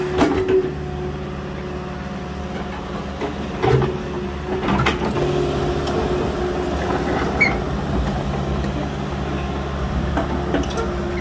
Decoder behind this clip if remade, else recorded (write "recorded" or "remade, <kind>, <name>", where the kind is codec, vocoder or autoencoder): recorded